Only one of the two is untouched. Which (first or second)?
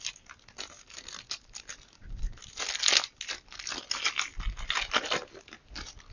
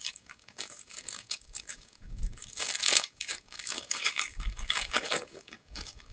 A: first